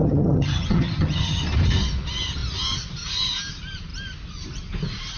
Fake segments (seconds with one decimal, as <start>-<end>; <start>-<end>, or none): 0.0-1.4